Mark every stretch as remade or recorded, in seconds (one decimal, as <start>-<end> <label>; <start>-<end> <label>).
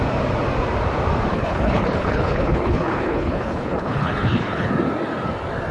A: 0.0-1.3 recorded; 1.3-4.7 remade; 4.7-5.7 recorded